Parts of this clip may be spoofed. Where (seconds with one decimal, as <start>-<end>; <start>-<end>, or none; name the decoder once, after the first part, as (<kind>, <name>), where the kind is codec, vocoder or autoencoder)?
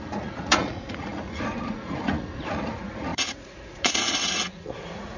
0.0-5.2 (vocoder, Vocos)